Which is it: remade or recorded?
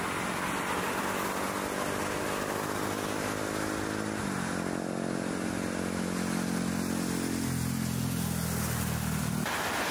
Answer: recorded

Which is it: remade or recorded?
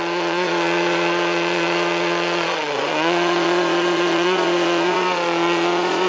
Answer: remade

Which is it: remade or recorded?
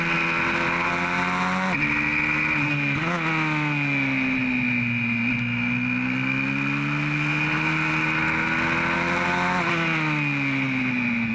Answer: recorded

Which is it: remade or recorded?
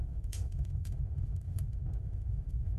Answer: remade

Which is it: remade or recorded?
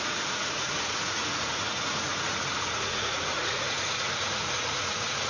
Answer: remade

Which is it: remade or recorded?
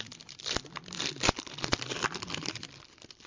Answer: remade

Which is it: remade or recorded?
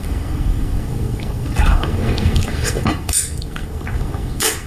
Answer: remade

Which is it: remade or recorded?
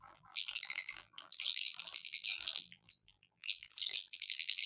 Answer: remade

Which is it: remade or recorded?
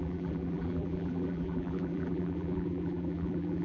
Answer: remade